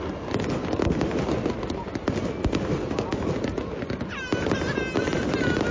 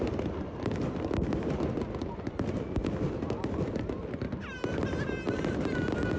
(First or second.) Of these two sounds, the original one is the first